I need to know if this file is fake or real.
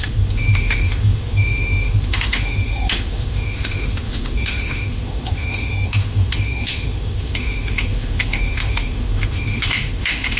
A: fake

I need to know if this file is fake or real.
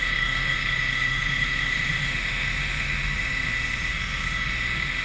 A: fake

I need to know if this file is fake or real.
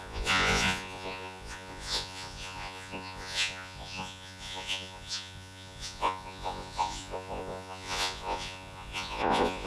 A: fake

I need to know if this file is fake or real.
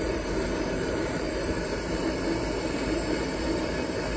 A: fake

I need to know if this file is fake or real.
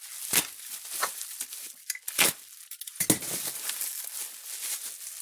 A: real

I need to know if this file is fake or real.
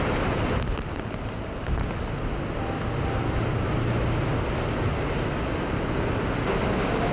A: real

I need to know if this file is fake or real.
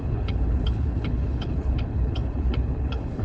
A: fake